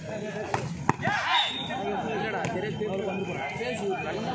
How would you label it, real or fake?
real